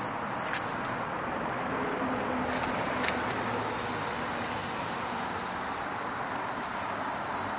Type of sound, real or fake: real